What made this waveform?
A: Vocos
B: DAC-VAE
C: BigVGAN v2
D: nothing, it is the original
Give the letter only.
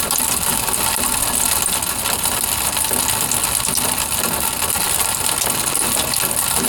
D